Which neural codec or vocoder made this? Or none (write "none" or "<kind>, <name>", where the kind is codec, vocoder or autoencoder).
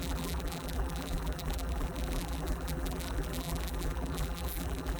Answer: vocoder, BigVGAN v2